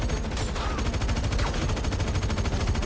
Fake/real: real